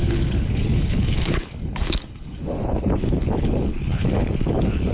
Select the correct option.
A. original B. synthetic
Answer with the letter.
B